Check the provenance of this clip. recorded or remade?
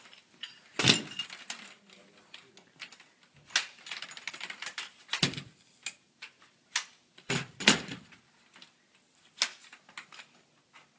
recorded